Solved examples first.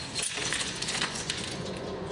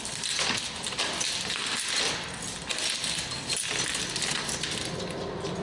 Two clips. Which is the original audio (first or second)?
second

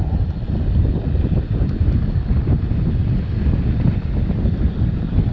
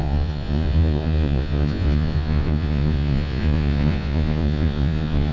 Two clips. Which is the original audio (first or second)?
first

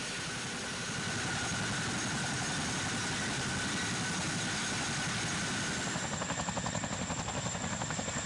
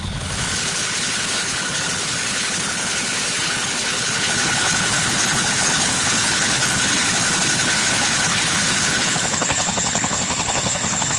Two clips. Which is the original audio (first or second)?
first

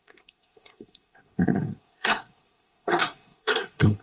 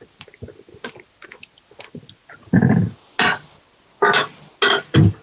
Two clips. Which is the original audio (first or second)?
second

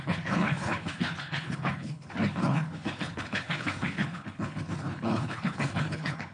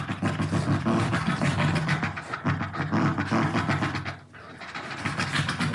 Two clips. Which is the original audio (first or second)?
second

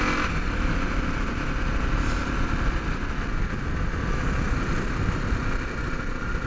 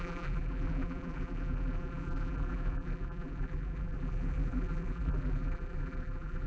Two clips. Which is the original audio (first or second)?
first